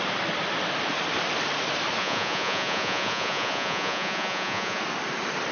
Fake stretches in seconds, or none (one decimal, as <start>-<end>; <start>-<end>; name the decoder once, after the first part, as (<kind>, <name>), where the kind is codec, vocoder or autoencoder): 2.0-4.8 (vocoder, Vocos)

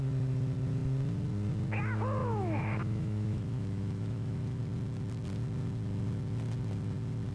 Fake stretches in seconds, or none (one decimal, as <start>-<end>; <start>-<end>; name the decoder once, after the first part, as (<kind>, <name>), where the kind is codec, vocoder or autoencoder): 2.2-4.6 (autoencoder, DAC-VAE)

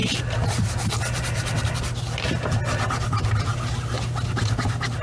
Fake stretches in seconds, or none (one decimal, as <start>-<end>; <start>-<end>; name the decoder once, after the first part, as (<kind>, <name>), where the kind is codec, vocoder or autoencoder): none

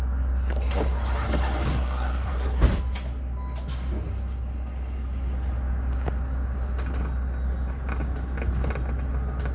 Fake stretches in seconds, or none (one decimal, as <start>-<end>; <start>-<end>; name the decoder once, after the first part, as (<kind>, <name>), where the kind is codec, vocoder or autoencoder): 1.7-2.6 (codec, SNAC)

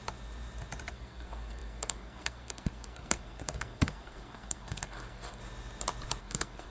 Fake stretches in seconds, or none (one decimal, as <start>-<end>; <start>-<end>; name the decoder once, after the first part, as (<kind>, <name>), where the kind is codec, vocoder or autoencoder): 0.9-5.4 (codec, SNAC); 6.2-6.7

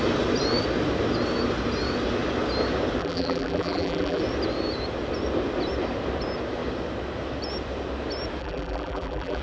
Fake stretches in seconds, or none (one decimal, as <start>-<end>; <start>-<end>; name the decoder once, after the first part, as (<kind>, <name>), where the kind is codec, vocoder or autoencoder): 3.0-4.2 (vocoder, BigVGAN v2); 8.4-9.4

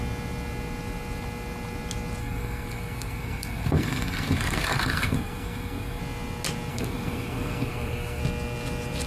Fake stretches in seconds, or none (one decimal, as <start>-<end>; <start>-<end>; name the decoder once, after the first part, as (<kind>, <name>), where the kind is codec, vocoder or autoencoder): 2.2-6.0 (codec, SNAC); 6.7-8.2